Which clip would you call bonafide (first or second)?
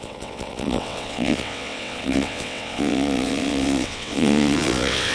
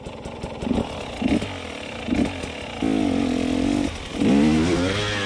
second